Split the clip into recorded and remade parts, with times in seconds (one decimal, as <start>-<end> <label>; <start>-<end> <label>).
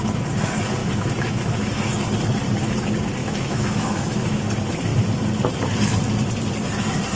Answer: 0.0-0.8 recorded; 0.8-1.7 remade; 1.7-3.2 recorded; 3.2-4.4 remade; 4.4-7.2 recorded